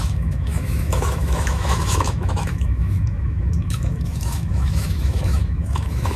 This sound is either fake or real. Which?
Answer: fake